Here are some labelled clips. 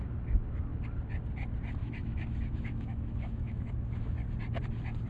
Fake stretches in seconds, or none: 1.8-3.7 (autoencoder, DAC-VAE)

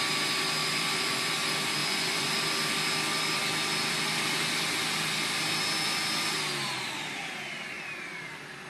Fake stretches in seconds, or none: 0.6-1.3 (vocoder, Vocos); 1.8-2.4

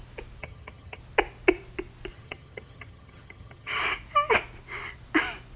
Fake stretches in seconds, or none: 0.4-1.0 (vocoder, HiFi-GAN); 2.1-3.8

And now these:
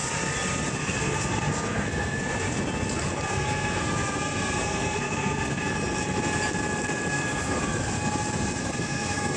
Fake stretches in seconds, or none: 0.7-2.2 (codec, SNAC); 3.3-5.7; 7.1-7.6; 8.6-9.4

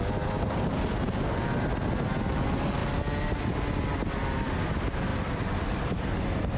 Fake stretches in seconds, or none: 5.1-6.6 (vocoder, BigVGAN v2)

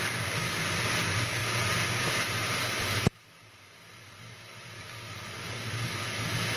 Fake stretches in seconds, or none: none

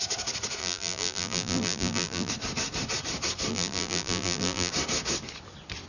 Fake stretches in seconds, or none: 0.6-2.3 (vocoder, BigVGAN v2); 3.5-4.7